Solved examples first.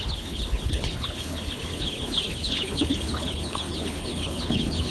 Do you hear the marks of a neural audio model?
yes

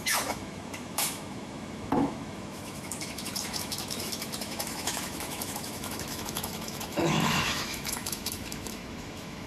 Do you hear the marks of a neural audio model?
yes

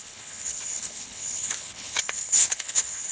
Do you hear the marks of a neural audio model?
yes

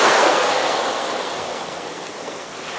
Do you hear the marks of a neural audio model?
yes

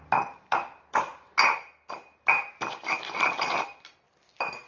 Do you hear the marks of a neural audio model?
no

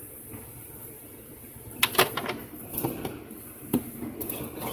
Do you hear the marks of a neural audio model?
no